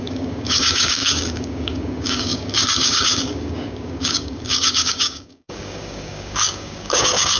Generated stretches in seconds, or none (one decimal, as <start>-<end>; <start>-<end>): 0.0-7.4